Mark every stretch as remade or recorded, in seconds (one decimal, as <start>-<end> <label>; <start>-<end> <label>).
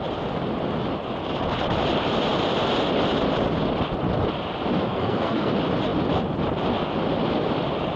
0.0-4.9 recorded; 4.9-5.5 remade; 5.5-8.0 recorded